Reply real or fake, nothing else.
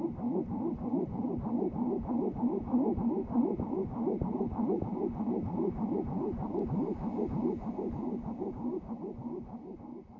real